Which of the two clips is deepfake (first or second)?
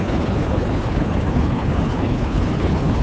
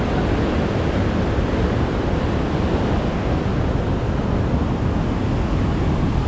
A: first